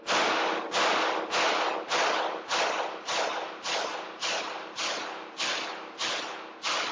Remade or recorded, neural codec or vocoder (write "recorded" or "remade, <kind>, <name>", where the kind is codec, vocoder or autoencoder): recorded